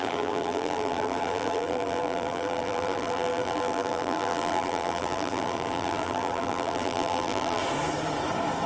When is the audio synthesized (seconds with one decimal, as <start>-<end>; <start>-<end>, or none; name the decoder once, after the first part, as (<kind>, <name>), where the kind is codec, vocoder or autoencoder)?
0.0-7.6 (vocoder, BigVGAN v2)